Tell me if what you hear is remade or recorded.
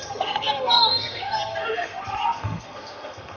remade